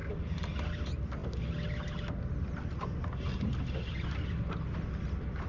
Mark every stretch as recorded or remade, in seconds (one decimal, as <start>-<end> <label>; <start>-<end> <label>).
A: 0.0-5.5 recorded